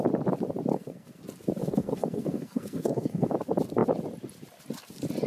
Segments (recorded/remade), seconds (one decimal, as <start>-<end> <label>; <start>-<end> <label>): 0.0-0.7 recorded; 0.7-1.2 remade; 1.2-1.6 recorded; 1.6-3.3 remade; 3.3-5.3 recorded